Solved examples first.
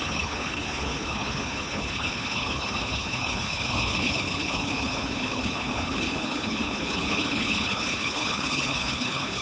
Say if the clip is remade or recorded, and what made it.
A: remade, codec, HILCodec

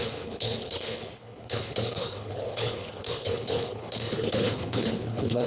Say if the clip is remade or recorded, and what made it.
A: remade, codec, HILCodec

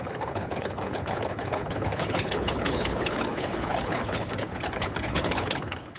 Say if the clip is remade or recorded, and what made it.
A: remade, codec, HILCodec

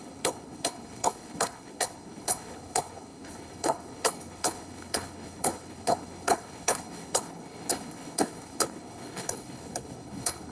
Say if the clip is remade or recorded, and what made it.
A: remade, codec, HILCodec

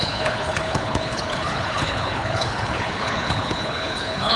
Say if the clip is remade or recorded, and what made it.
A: remade, codec, HILCodec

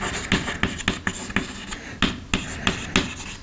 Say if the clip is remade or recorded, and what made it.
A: recorded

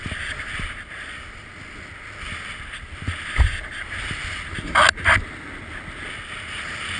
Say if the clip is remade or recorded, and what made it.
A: recorded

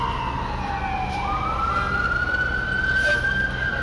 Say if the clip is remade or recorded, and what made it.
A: recorded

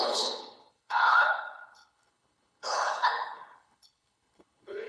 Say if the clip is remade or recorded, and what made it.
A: remade, codec, HILCodec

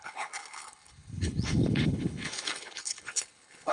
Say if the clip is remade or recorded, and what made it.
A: remade, codec, HILCodec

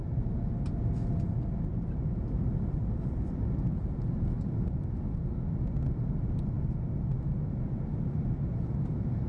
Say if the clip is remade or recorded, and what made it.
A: recorded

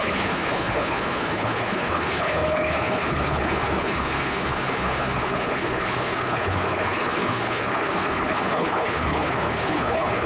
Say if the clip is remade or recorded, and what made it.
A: remade, codec, HILCodec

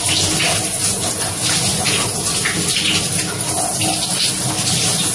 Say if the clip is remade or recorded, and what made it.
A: recorded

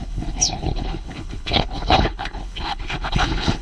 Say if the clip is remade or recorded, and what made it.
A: remade, codec, HILCodec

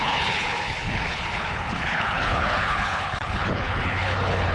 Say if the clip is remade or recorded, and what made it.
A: remade, codec, HILCodec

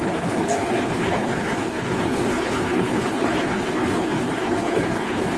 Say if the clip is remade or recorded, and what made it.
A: remade, codec, HILCodec